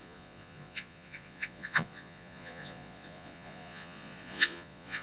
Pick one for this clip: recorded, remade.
remade